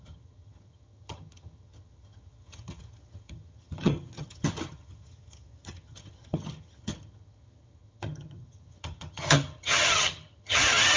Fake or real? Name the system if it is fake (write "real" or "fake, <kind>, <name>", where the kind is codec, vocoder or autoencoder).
fake, vocoder, HiFi-GAN